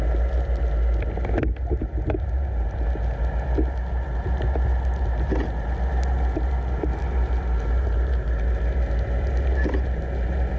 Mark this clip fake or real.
real